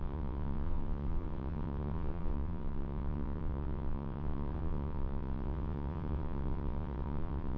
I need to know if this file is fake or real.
fake